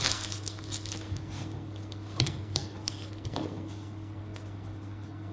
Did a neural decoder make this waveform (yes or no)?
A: yes